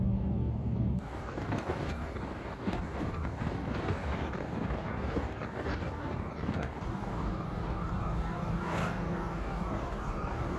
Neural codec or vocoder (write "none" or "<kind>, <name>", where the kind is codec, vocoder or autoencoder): codec, DAC